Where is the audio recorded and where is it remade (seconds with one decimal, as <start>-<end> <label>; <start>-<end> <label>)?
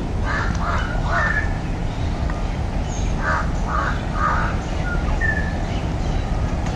0.0-6.8 recorded